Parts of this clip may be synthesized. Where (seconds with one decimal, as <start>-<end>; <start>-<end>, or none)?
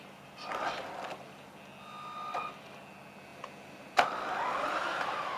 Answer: none